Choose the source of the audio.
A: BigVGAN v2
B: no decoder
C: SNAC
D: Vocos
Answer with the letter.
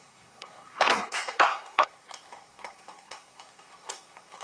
C